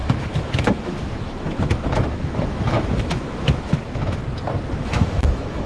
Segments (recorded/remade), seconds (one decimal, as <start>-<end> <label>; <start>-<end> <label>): 0.0-4.2 remade; 4.2-4.8 recorded; 4.8-5.7 remade

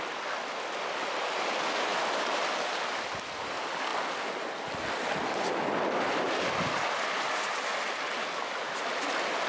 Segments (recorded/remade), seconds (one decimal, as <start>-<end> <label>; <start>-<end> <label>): 0.0-9.5 recorded

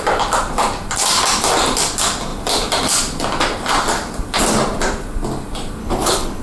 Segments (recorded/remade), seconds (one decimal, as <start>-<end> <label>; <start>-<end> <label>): 0.0-5.8 recorded; 5.8-6.4 remade

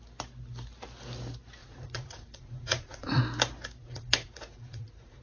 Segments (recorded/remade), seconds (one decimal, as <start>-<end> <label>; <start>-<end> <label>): 0.0-1.6 recorded; 1.6-3.2 remade; 3.2-3.8 recorded; 3.8-5.2 remade

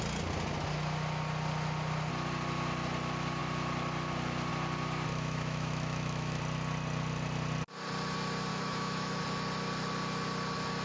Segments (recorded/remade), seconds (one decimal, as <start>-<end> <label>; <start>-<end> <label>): 0.0-5.1 recorded; 5.1-6.4 remade; 6.4-8.5 recorded; 8.5-9.2 remade; 9.2-10.8 recorded

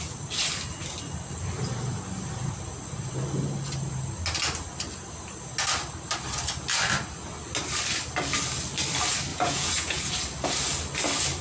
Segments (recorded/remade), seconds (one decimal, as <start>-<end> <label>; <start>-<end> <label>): 0.0-9.3 recorded; 9.3-10.1 remade; 10.1-11.4 recorded

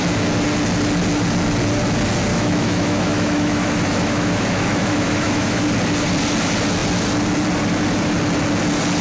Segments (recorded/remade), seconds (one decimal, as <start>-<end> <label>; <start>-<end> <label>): 0.0-2.3 recorded; 2.3-5.6 remade; 5.6-9.0 recorded